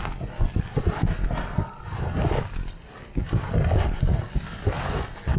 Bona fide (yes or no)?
yes